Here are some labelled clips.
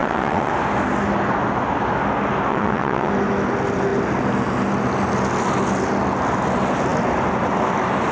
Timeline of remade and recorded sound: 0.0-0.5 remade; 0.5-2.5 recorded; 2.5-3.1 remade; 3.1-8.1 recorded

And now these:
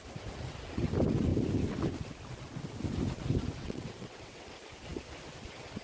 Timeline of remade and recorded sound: 0.0-3.6 recorded; 3.6-4.5 remade; 4.5-5.8 recorded

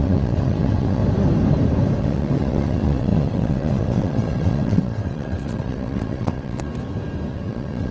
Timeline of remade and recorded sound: 0.0-1.0 remade; 1.0-2.0 recorded; 2.0-6.7 remade; 6.7-7.3 recorded; 7.3-7.9 remade

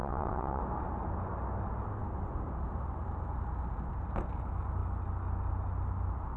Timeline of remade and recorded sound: 0.0-0.6 remade; 0.6-6.4 recorded

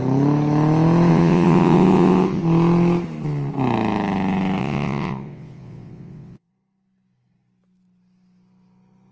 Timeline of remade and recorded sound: 0.0-1.1 recorded; 1.1-2.4 remade; 2.4-4.6 recorded; 4.6-6.5 remade; 6.5-9.1 recorded

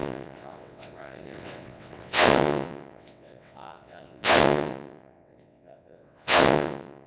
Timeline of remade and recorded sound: 0.0-7.1 remade

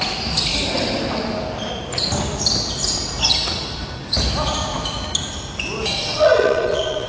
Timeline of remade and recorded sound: 0.0-6.0 recorded; 6.0-7.1 remade

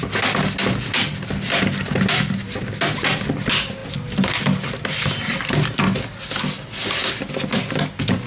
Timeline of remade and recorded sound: 0.0-8.3 recorded